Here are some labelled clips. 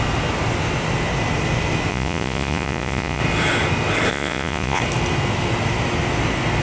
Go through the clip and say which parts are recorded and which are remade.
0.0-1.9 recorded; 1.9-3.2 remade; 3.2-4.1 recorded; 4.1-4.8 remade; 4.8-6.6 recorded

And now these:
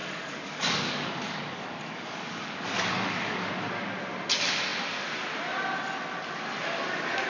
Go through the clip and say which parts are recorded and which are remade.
0.0-3.5 remade; 3.5-7.3 recorded

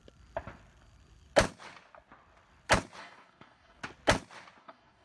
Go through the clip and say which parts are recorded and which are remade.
0.0-3.0 recorded; 3.0-3.8 remade; 3.8-4.6 recorded; 4.6-5.0 remade

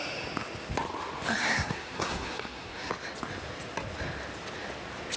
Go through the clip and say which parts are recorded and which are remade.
0.0-1.4 recorded; 1.4-2.9 remade; 2.9-5.2 recorded

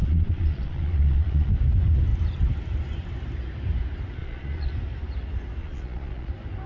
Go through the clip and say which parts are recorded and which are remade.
0.0-1.5 remade; 1.5-4.2 recorded; 4.2-4.7 remade; 4.7-5.6 recorded; 5.6-6.3 remade; 6.3-6.7 recorded

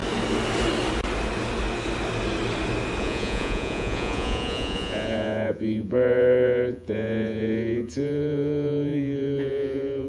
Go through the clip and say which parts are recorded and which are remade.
0.0-3.0 recorded; 3.0-10.1 remade